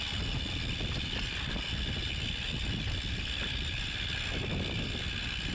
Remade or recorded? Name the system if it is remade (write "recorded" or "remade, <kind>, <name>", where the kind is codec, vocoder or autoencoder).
recorded